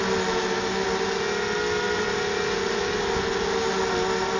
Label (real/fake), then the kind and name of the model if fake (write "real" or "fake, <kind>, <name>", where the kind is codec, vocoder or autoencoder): real